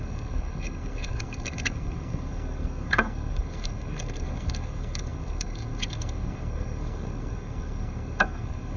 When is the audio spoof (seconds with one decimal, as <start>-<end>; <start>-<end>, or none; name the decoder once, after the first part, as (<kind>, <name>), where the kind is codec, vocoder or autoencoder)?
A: 0.0-8.8 (codec, SNAC)